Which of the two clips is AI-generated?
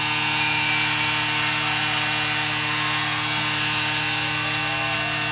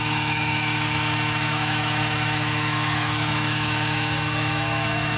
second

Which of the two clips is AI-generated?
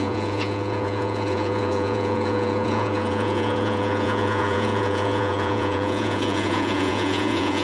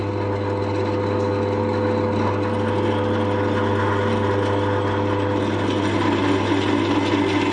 first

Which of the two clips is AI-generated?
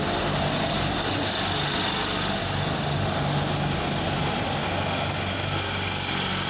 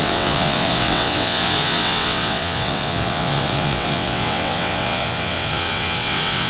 second